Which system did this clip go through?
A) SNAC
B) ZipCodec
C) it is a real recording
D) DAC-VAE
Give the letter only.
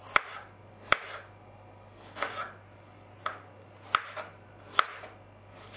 C